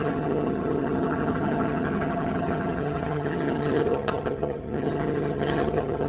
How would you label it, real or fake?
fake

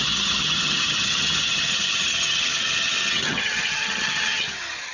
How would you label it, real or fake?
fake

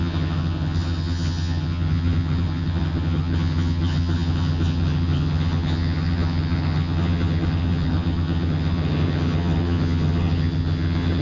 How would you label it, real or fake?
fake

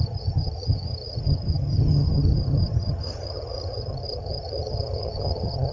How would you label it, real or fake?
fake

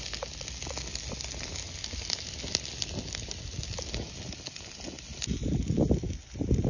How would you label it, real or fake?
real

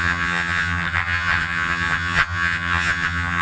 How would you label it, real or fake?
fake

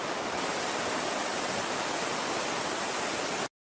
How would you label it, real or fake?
real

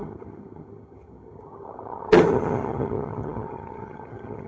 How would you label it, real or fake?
fake